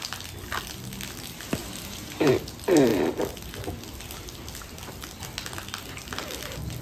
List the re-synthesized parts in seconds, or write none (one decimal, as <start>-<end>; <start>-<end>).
1.6-2.3